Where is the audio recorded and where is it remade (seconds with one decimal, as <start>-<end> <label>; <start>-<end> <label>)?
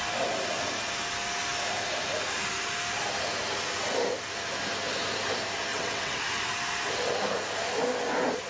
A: 0.0-5.7 recorded; 5.7-6.2 remade; 6.2-8.5 recorded